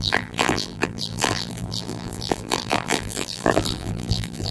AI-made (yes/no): yes